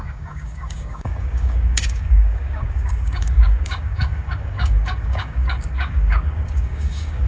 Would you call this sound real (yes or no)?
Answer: no